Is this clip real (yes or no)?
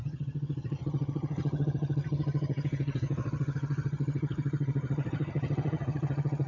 no